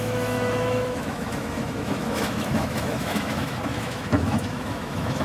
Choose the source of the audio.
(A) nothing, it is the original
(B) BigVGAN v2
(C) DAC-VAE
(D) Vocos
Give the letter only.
C